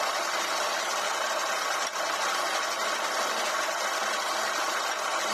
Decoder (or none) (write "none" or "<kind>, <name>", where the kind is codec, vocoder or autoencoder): none